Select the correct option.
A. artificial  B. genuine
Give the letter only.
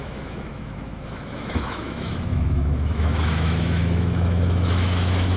A